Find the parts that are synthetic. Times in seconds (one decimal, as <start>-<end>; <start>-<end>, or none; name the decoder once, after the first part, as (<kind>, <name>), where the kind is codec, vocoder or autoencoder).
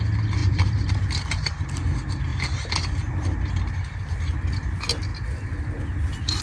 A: 0.4-0.9 (vocoder, BigVGAN v2)